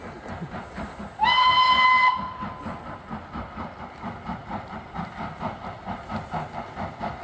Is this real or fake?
real